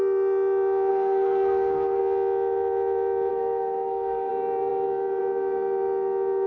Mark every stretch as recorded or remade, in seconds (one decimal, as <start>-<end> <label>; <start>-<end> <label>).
0.0-0.9 recorded; 0.9-2.0 remade; 2.0-3.3 recorded; 3.3-4.3 remade; 4.3-6.5 recorded